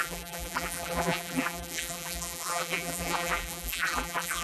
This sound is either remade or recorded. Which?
remade